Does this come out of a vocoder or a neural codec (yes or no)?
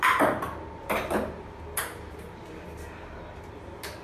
no